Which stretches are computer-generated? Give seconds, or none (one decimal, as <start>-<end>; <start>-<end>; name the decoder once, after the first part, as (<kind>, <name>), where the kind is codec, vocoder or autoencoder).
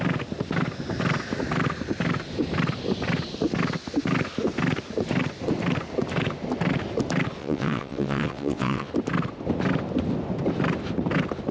7.4-8.9 (vocoder, WaveNeXt)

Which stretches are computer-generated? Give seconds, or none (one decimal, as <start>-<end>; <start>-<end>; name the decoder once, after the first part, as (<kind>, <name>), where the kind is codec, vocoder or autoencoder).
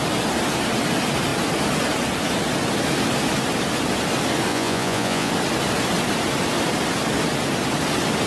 4.5-5.3 (vocoder, Vocos)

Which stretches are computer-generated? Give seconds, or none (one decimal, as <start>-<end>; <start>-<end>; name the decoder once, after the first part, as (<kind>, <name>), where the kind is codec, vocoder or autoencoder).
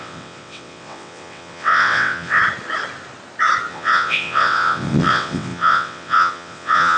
0.0-2.4 (vocoder, WaveNeXt); 3.7-7.0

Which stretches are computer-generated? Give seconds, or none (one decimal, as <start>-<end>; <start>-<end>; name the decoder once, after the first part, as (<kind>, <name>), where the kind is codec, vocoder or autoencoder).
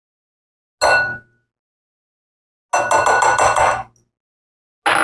none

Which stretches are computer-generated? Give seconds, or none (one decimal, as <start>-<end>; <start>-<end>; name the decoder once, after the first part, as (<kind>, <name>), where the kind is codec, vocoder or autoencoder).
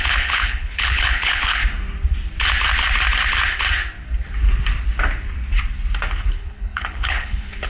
0.0-1.6 (codec, HILCodec); 6.2-7.7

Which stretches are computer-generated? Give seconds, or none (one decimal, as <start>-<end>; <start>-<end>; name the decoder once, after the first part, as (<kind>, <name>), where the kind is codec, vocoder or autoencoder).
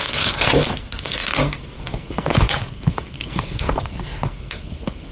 0.0-5.1 (codec, SNAC)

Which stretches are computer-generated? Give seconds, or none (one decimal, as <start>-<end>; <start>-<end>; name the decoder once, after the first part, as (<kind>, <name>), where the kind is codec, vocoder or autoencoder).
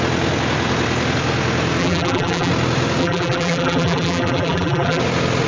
1.8-2.5 (vocoder, BigVGAN v2); 3.0-5.0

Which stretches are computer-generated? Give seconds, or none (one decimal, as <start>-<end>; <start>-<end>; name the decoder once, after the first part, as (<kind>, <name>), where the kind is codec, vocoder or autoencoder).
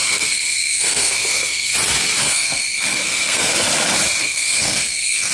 0.0-1.7 (codec, SNAC); 2.2-3.5; 4.2-5.3